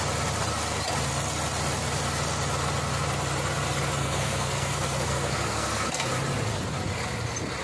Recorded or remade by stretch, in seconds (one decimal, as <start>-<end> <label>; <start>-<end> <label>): 0.0-4.0 recorded; 4.0-6.1 remade; 6.1-7.6 recorded